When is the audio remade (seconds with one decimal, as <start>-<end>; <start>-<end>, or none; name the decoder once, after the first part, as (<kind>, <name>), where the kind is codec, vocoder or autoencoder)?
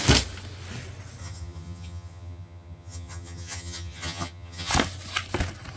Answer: 1.2-4.7 (vocoder, HiFi-GAN)